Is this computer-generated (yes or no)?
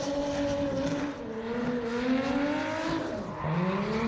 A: no